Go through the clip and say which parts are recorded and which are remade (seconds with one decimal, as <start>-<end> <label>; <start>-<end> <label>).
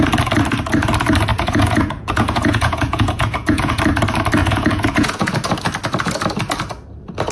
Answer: 0.0-1.3 recorded; 1.3-3.8 remade; 3.8-4.4 recorded; 4.4-5.3 remade; 5.3-7.3 recorded